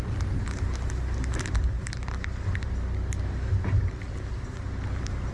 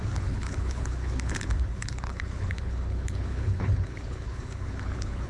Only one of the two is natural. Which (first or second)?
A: first